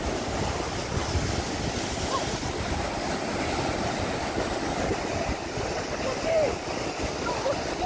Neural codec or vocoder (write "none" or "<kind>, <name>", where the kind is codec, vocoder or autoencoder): none